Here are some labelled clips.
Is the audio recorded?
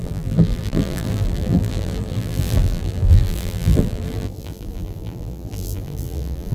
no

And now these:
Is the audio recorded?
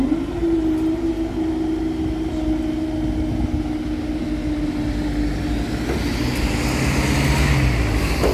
yes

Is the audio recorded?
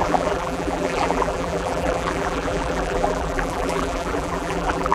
no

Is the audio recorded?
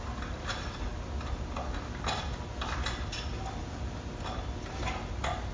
yes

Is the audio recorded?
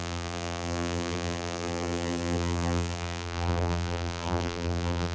no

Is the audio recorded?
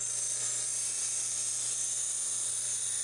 yes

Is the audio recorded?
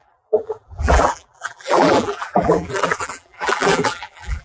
no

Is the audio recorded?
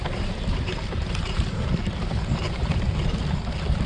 no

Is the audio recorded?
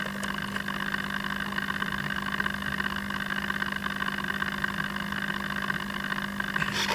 yes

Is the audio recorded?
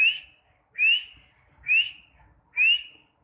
yes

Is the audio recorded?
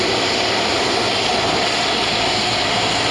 yes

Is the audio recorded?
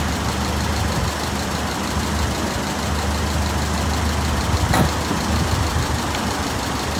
yes